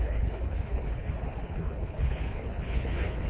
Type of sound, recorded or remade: remade